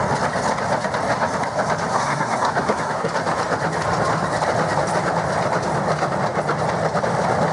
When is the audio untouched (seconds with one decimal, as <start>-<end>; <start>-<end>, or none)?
0.0-1.9; 3.1-7.5